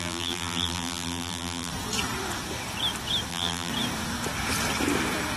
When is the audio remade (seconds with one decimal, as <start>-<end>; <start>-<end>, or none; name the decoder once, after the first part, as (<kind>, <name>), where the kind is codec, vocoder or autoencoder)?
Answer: 0.0-1.7 (vocoder, BigVGAN v2); 3.3-3.7